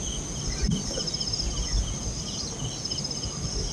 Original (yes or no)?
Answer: yes